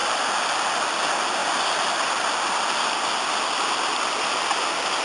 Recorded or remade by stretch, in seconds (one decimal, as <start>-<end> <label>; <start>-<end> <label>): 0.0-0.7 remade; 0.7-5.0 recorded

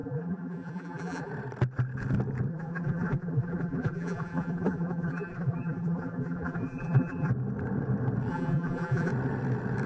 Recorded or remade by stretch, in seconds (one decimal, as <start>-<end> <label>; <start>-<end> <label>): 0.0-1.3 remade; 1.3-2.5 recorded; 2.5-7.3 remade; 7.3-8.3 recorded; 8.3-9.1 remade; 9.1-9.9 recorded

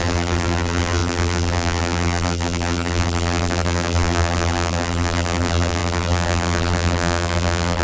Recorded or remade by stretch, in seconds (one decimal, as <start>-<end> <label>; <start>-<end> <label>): 0.0-7.8 remade

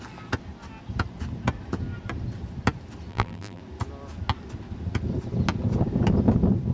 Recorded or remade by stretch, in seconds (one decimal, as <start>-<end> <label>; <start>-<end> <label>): 0.0-3.1 recorded; 3.1-3.6 remade; 3.6-6.7 recorded

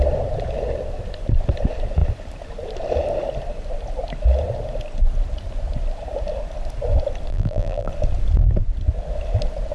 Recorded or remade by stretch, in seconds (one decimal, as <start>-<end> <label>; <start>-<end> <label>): 0.0-7.3 recorded; 7.3-7.9 remade; 7.9-9.7 recorded

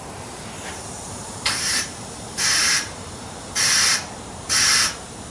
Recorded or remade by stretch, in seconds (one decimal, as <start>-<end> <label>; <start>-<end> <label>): 0.0-4.0 remade; 4.0-5.3 recorded

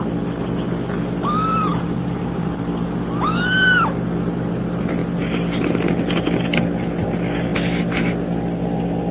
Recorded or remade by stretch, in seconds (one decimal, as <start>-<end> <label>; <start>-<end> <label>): 0.0-1.7 recorded; 1.7-2.6 remade; 2.6-9.1 recorded

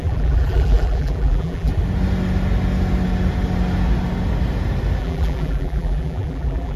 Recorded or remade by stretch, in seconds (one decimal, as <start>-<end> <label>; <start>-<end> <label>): 0.0-1.7 remade; 1.7-5.0 recorded; 5.0-6.8 remade